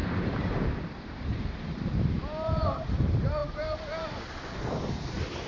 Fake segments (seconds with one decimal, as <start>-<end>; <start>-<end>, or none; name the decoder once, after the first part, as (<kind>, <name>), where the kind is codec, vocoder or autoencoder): 0.0-5.5 (vocoder, BigVGAN v2)